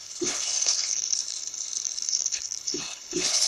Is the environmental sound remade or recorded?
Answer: remade